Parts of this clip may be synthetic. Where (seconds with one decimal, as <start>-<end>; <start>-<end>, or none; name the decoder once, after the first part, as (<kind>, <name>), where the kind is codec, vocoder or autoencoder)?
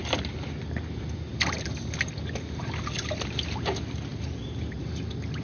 none